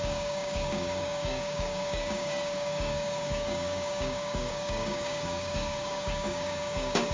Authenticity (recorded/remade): remade